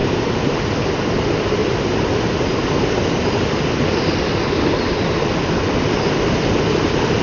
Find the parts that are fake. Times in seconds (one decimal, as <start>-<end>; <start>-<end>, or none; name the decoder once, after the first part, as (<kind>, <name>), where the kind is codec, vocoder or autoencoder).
0.0-0.8 (vocoder, BigVGAN v2)